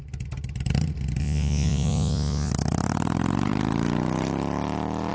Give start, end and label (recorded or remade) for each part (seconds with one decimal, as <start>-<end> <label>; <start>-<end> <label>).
0.0-1.2 recorded; 1.2-2.5 remade; 2.5-5.1 recorded